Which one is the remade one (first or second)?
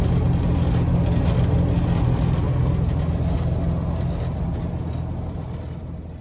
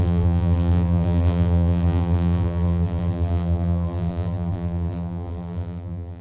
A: second